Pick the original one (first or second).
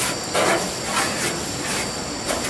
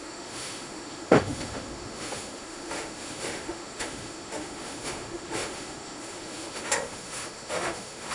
first